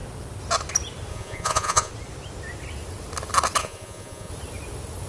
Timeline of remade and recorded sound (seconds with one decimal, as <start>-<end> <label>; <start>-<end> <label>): 0.0-1.1 recorded; 1.1-1.9 remade; 1.9-3.6 recorded; 3.6-4.3 remade; 4.3-5.1 recorded